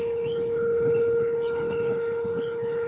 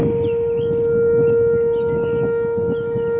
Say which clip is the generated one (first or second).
first